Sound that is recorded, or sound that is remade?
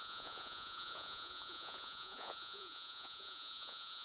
remade